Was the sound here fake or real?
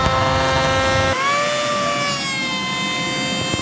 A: real